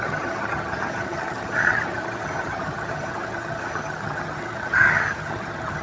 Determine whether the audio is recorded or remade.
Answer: remade